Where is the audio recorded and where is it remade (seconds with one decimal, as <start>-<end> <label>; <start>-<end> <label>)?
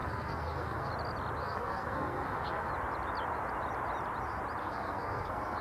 0.0-0.9 remade; 0.9-1.4 recorded; 1.4-2.7 remade; 2.7-4.6 recorded; 4.6-5.6 remade